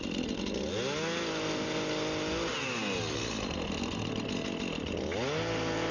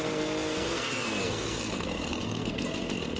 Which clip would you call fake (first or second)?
second